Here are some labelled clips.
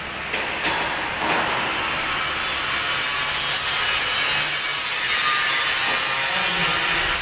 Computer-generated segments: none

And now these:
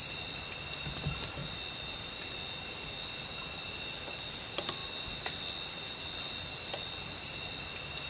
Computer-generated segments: none

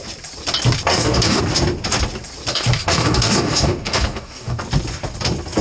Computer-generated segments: 0.9-1.4; 2.5-4.6